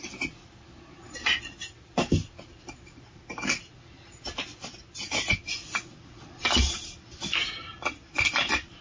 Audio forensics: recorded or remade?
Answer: recorded